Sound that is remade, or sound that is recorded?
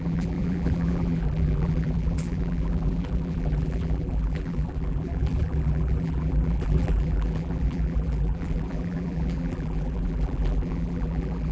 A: remade